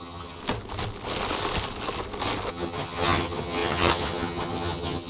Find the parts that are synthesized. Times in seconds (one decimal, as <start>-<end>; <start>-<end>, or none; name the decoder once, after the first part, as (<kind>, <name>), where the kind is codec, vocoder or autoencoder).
0.0-0.4 (vocoder, HiFi-GAN); 2.5-5.1